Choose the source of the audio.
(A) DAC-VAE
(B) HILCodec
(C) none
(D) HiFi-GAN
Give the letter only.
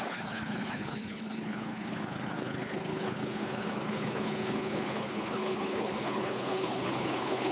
B